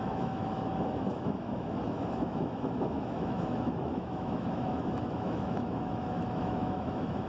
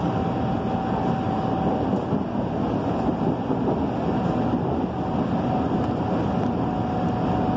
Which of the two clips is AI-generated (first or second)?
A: first